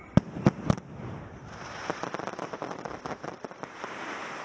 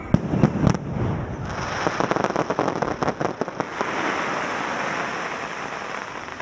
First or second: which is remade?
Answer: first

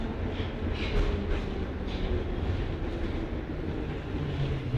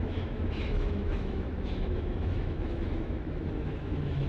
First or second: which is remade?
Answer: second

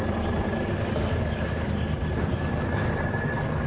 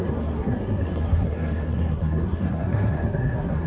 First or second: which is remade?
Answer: second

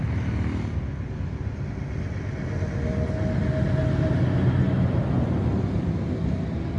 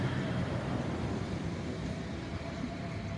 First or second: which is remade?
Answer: second